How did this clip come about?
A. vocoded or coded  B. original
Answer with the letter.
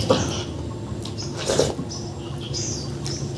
B